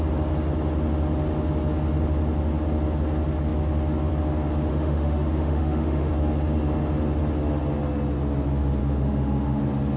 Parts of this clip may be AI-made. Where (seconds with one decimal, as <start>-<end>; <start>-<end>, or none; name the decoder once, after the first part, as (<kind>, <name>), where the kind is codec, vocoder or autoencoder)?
4.7-6.1 (autoencoder, DAC-VAE); 8.8-9.6